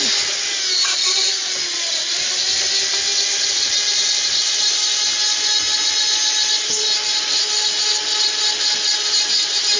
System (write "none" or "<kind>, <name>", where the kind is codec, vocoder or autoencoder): none